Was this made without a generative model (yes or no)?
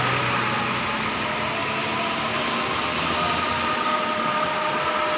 yes